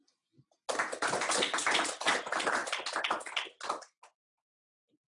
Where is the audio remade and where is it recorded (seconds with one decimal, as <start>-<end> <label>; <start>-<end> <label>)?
0.0-5.2 recorded